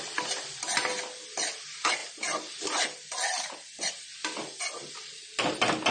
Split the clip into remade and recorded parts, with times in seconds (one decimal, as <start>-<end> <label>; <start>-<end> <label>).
0.0-5.9 recorded